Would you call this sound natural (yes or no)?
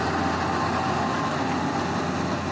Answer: yes